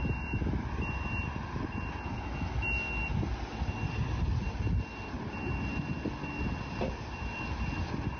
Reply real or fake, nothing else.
real